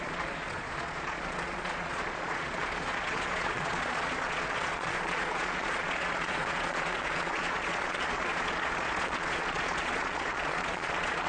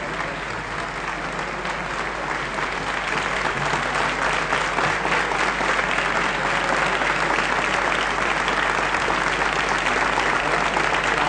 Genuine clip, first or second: second